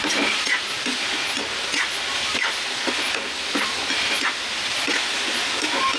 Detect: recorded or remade recorded